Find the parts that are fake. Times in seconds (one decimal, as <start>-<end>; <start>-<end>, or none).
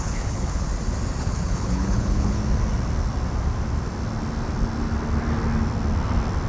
0.0-0.7; 1.2-2.4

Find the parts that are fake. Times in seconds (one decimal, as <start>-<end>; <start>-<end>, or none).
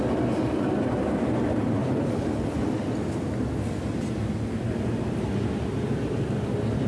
1.8-2.6